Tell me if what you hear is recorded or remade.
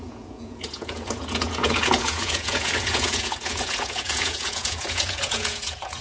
remade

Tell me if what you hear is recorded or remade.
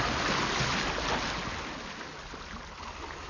recorded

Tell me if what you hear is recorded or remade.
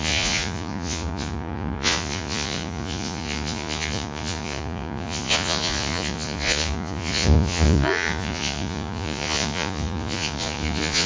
remade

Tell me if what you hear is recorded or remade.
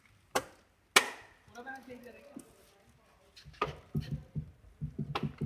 recorded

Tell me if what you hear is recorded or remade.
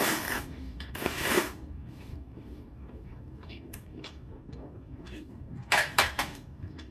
remade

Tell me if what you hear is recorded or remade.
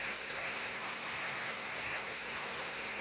remade